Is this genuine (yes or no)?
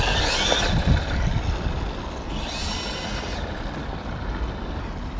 yes